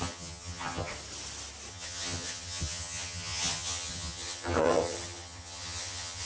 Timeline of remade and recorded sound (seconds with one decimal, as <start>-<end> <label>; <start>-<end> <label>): 0.0-0.9 remade; 0.9-1.7 recorded; 1.7-6.3 remade